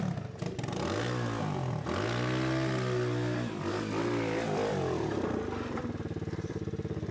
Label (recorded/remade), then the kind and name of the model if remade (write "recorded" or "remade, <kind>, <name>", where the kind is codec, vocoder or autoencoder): recorded